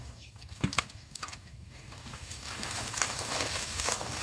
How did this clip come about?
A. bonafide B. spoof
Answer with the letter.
B